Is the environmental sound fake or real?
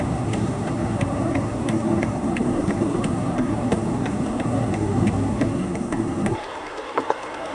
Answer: fake